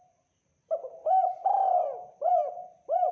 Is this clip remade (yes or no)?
yes